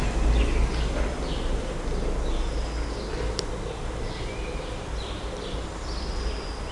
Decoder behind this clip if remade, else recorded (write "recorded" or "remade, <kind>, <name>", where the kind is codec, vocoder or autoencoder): recorded